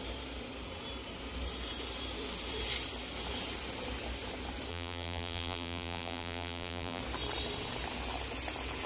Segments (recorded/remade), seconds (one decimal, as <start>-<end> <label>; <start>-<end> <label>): 0.0-4.7 recorded; 4.7-7.0 remade; 7.0-8.9 recorded